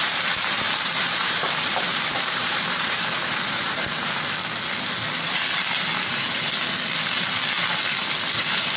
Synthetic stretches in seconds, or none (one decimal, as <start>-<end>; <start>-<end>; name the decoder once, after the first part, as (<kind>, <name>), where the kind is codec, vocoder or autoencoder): 0.0-4.4 (vocoder, BigVGAN v2); 6.1-6.6; 8.4-8.8